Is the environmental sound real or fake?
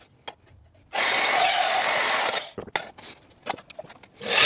real